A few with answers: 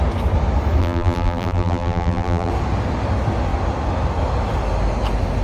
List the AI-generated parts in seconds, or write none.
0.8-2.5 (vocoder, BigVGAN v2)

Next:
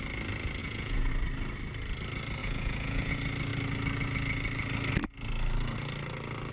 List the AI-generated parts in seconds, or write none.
0.6-1.1 (vocoder, Vocos); 2.4-3.1

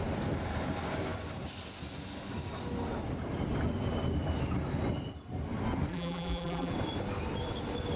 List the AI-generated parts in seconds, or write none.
5.9-6.7 (vocoder, BigVGAN v2)

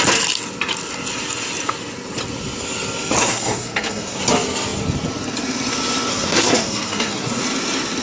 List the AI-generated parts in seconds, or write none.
3.2-4.2 (codec, SNAC); 6.1-7.4